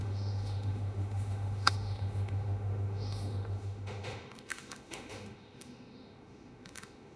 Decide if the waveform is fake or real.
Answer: fake